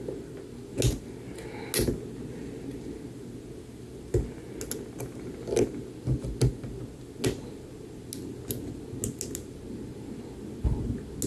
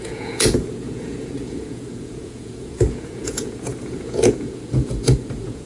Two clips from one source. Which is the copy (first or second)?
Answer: second